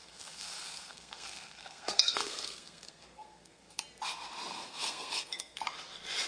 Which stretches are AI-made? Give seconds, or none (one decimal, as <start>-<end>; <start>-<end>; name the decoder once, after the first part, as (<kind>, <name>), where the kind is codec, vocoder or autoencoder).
0.0-3.8 (codec, SNAC); 4.5-5.6